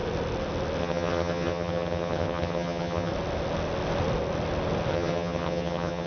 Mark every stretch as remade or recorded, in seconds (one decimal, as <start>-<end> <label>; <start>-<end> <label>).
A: 0.0-0.8 recorded; 0.8-3.1 remade; 3.1-4.9 recorded; 4.9-6.1 remade